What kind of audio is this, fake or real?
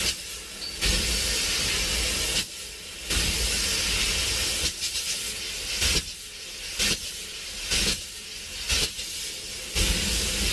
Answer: real